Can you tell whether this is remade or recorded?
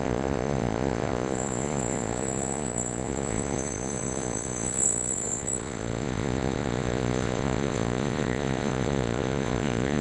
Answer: remade